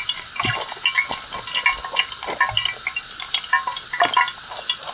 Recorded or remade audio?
recorded